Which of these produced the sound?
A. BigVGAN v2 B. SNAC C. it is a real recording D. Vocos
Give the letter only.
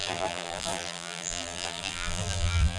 A